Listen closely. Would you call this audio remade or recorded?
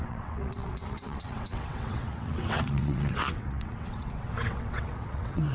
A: remade